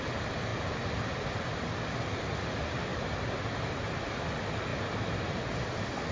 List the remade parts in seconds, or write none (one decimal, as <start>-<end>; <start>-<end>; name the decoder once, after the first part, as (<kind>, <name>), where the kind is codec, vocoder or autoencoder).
none